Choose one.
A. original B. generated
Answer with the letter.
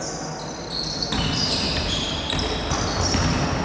A